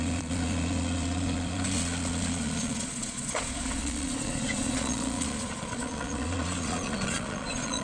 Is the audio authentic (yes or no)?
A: no